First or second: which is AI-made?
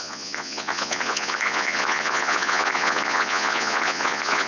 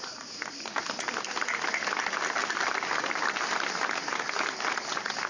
first